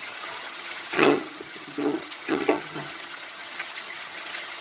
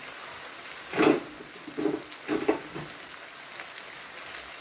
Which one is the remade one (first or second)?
first